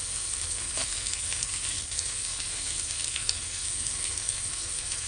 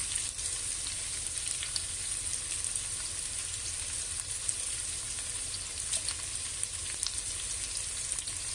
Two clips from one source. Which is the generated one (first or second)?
first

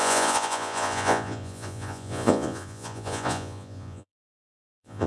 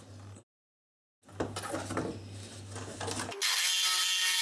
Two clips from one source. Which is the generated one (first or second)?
first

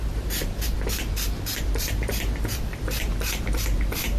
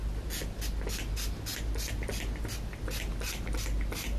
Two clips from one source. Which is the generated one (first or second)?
first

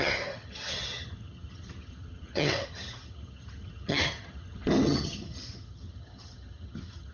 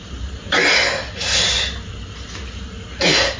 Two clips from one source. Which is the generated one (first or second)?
first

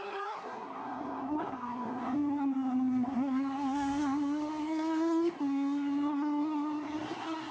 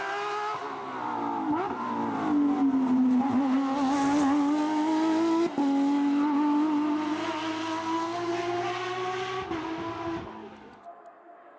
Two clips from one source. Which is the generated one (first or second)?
first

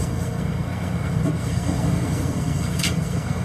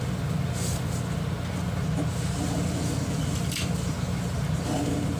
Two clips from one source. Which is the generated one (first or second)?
first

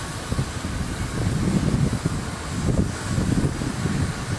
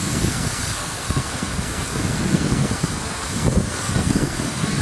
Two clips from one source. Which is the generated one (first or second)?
second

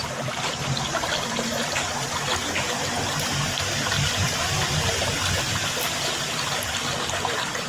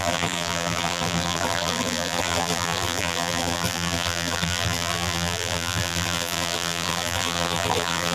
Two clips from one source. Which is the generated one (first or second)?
second